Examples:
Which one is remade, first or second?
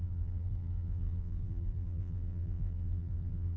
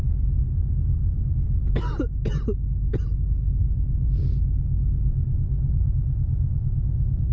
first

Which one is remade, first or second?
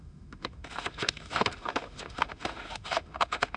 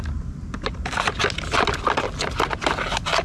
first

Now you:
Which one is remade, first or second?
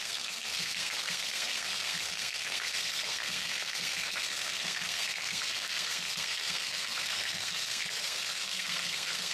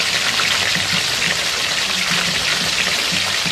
first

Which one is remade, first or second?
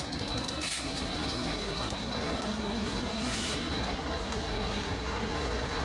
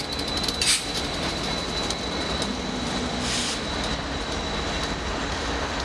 first